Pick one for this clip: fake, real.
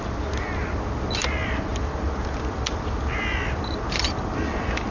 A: real